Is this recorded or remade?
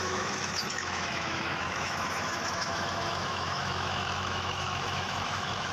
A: remade